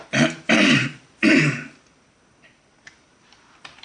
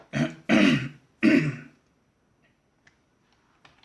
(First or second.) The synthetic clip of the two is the first